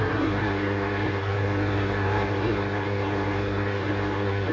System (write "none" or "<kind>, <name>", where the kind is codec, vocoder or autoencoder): codec, SNAC